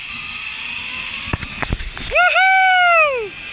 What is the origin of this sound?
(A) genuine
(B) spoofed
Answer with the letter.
A